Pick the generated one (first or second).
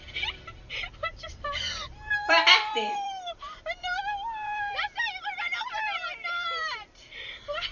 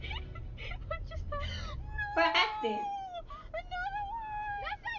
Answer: first